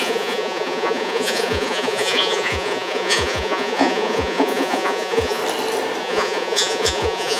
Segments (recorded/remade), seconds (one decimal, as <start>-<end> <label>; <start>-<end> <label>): 0.0-5.4 remade; 5.4-6.0 recorded; 6.0-7.4 remade